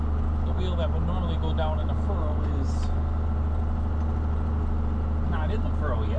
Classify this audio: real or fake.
real